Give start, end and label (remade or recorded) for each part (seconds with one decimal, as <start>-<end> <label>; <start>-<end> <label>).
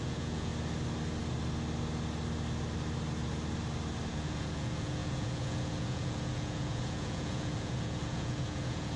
0.0-0.5 remade; 0.5-4.1 recorded; 4.1-9.0 remade